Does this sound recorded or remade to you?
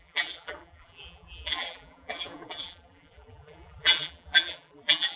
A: remade